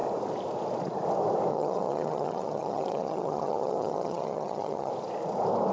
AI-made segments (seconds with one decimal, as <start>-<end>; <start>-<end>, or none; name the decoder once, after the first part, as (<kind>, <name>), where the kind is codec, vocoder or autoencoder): 1.5-4.9 (vocoder, HiFi-GAN)